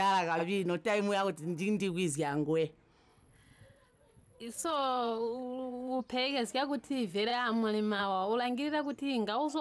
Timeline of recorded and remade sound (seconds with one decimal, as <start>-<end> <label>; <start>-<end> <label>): 0.0-3.1 recorded; 3.1-6.0 remade; 6.0-9.6 recorded